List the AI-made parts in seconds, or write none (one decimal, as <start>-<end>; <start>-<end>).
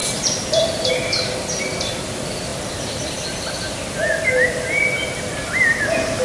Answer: none